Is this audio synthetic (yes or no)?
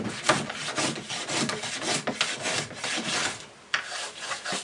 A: no